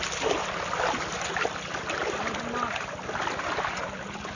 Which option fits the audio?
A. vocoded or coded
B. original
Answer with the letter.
B